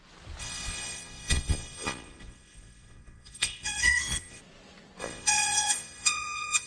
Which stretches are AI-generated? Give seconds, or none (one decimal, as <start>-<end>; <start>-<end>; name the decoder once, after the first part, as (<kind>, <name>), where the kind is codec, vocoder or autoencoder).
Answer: 0.4-4.4 (vocoder, Vocos); 5.0-6.7